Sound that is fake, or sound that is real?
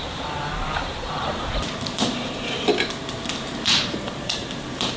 fake